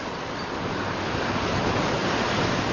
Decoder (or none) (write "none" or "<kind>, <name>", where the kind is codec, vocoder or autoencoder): none